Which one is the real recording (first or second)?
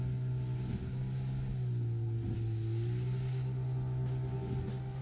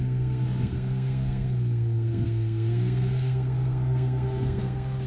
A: first